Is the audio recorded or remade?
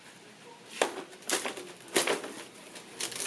recorded